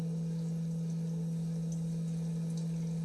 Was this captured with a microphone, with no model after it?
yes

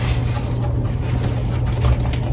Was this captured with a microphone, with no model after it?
yes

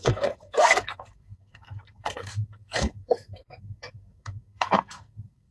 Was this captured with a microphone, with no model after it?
no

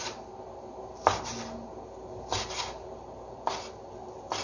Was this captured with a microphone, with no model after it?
yes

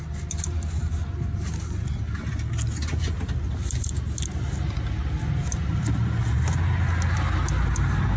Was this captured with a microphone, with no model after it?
yes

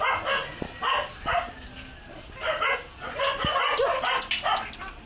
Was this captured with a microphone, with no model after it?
yes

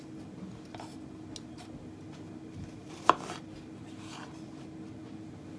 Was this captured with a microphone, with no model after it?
yes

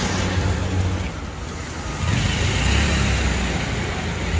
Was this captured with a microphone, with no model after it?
yes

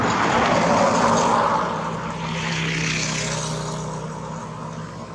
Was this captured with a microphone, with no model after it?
yes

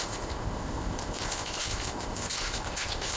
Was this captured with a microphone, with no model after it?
no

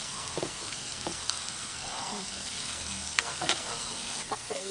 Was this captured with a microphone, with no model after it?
no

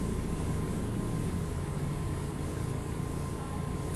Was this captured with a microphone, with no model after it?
no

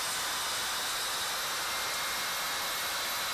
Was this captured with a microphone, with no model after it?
yes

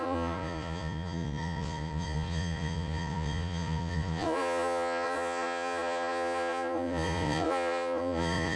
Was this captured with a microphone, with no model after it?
no